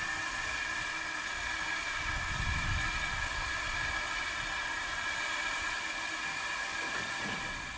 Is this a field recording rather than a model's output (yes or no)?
yes